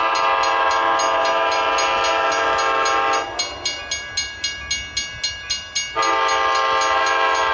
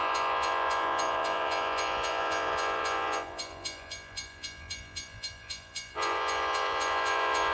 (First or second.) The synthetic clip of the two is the second